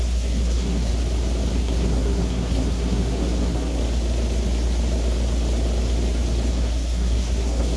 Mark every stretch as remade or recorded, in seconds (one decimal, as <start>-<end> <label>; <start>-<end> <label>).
0.0-0.9 remade; 0.9-1.6 recorded; 1.6-3.8 remade; 3.8-6.5 recorded; 6.5-7.8 remade